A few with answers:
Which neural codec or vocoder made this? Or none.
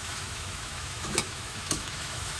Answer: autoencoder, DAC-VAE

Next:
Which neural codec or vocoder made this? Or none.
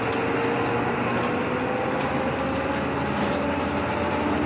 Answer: none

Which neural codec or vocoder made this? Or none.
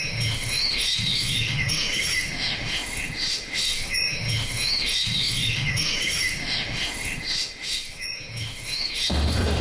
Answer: autoencoder, DAC-VAE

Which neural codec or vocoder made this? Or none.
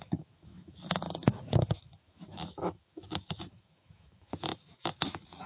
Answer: autoencoder, DAC-VAE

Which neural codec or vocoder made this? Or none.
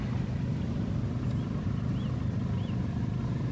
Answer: none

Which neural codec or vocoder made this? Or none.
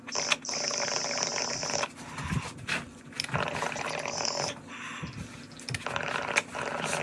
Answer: none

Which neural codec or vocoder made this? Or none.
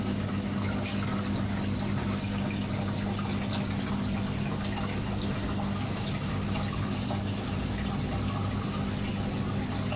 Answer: none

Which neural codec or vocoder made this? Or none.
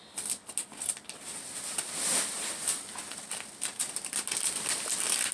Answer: none